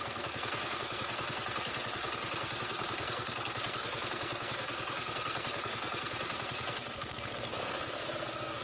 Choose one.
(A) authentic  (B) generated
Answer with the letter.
B